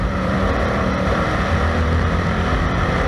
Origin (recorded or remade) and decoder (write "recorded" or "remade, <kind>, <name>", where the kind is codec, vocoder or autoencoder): remade, vocoder, BigVGAN v2